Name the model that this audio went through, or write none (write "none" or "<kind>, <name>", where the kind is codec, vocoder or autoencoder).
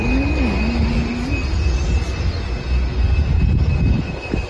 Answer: none